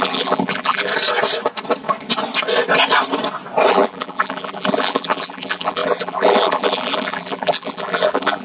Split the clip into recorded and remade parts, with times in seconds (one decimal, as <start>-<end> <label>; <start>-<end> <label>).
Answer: 0.0-0.9 remade; 0.9-3.7 recorded; 3.7-8.4 remade